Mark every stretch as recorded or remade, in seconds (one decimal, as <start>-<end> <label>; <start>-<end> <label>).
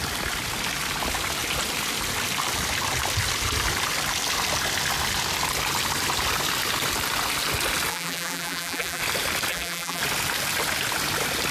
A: 0.0-7.9 recorded; 7.9-9.0 remade; 9.0-9.5 recorded; 9.5-10.0 remade; 10.0-11.5 recorded